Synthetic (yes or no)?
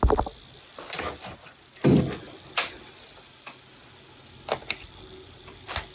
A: no